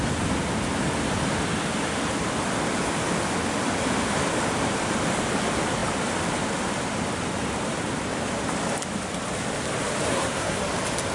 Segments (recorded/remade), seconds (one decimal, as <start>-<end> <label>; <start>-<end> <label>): 0.0-10.1 recorded; 10.1-10.6 remade; 10.6-11.1 recorded